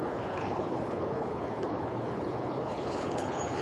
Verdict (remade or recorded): remade